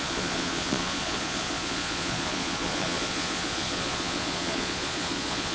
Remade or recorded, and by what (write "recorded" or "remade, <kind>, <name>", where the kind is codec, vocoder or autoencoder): remade, vocoder, Vocos